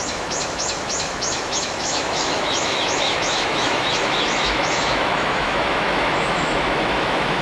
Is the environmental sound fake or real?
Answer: fake